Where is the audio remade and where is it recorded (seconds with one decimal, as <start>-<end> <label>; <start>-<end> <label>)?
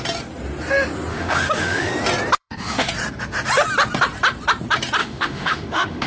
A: 0.0-1.1 recorded; 1.1-1.9 remade; 1.9-2.4 recorded; 2.4-2.9 remade; 2.9-5.0 recorded; 5.0-6.1 remade